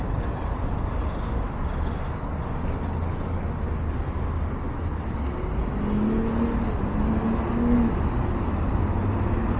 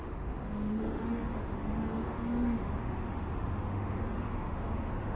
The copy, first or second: second